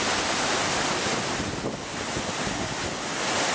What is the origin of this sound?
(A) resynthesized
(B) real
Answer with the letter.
B